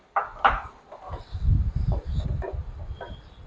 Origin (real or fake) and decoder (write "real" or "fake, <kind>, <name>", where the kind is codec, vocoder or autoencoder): real